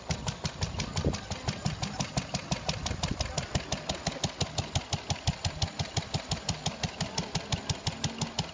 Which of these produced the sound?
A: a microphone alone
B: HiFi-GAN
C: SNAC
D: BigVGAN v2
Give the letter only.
A